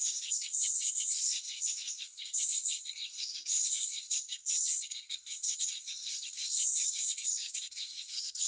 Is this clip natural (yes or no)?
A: no